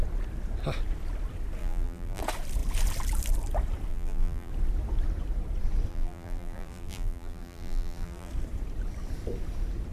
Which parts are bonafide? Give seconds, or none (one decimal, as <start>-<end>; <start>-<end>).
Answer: 0.0-1.6; 2.2-3.9; 4.5-5.9; 8.3-9.9

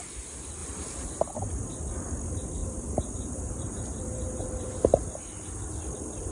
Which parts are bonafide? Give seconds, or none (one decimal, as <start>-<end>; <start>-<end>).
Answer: 0.0-2.6; 4.7-6.3

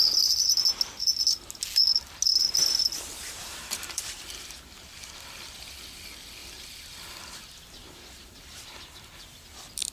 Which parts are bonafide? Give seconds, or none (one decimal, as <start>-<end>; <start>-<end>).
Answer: 0.0-3.1; 4.3-6.4; 7.1-9.9